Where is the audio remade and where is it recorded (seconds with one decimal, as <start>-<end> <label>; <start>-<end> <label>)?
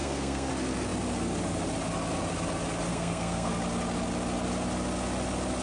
0.0-0.5 remade; 0.5-2.9 recorded; 2.9-3.5 remade; 3.5-5.6 recorded